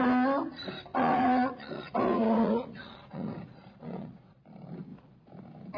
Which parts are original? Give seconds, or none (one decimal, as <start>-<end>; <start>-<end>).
0.0-0.9; 4.4-5.8